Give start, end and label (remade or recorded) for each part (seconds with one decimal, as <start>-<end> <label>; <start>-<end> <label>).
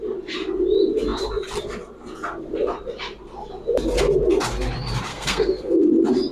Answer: 0.0-5.1 recorded; 5.1-5.8 remade; 5.8-6.3 recorded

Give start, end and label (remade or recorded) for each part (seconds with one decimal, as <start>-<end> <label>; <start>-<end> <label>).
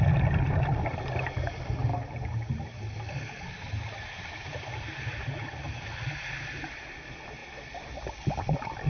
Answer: 0.0-8.9 recorded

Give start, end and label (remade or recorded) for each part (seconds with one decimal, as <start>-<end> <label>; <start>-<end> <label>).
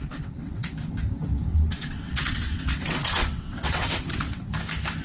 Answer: 0.0-0.7 remade; 0.7-1.5 recorded; 1.5-4.5 remade; 4.5-5.0 recorded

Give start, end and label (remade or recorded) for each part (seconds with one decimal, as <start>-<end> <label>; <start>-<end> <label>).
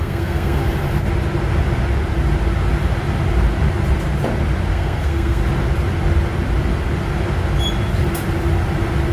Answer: 0.0-0.6 remade; 0.6-4.7 recorded; 4.7-5.4 remade; 5.4-9.1 recorded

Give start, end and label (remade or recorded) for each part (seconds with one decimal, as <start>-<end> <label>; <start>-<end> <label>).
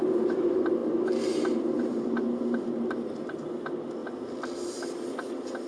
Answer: 0.0-5.7 recorded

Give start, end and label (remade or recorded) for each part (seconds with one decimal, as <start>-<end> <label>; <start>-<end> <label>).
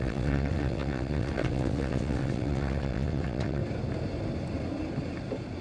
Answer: 0.0-3.6 remade; 3.6-5.6 recorded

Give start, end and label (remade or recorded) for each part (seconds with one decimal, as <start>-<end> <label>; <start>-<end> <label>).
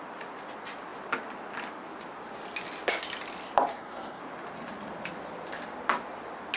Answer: 0.0-3.7 recorded; 3.7-4.2 remade; 4.2-6.6 recorded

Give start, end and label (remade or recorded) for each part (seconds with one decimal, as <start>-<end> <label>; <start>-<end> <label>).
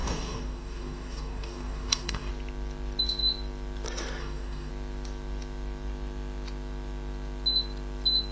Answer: 0.0-2.3 remade; 2.3-4.2 recorded; 4.2-4.7 remade; 4.7-8.3 recorded